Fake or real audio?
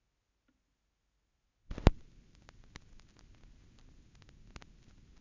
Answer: real